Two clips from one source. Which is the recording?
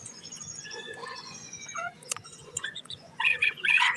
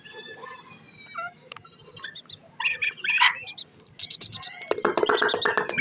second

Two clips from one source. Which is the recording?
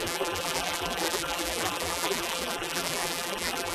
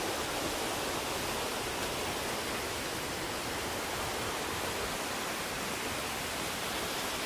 second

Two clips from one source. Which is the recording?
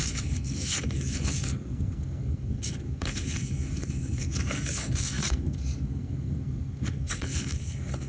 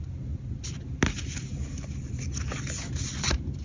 second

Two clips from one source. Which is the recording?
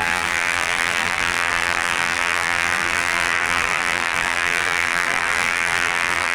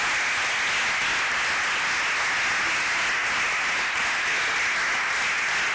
second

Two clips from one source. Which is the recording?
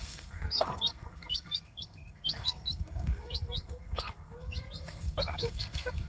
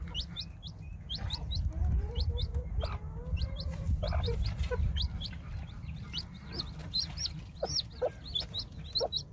second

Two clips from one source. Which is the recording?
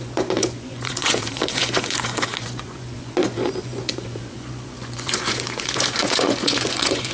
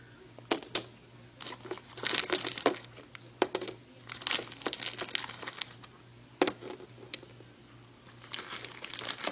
second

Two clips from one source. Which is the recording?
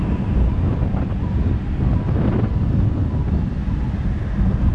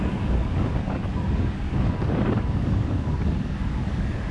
first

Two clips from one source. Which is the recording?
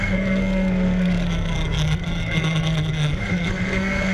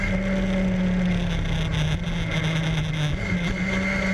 second